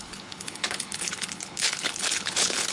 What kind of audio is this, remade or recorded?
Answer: remade